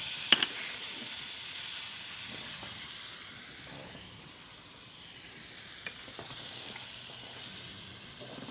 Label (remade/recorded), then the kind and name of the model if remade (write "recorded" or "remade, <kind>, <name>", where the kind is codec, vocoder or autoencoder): remade, vocoder, BigVGAN v2